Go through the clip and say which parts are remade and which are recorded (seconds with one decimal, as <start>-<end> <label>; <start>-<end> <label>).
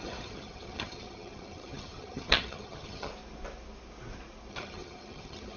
0.0-3.1 remade; 3.1-4.5 recorded; 4.5-5.6 remade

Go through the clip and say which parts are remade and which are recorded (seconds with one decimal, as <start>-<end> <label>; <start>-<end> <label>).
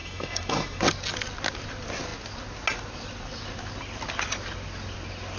0.0-0.8 remade; 0.8-5.4 recorded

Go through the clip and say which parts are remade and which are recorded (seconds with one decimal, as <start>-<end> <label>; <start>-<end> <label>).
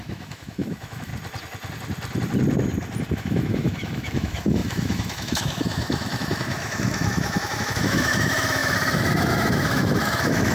0.0-1.1 remade; 1.1-3.1 recorded; 3.1-10.5 remade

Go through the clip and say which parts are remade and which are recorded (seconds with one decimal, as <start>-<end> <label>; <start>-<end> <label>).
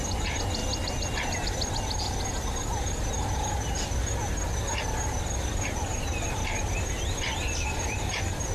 0.0-8.5 recorded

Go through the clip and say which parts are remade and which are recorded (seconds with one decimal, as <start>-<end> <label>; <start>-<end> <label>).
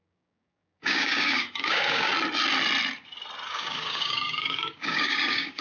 0.0-2.1 remade; 2.1-3.5 recorded; 3.5-5.6 remade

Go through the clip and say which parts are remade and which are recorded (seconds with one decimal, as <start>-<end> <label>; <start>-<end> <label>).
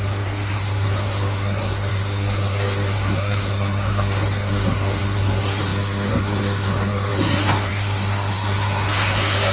0.0-9.5 remade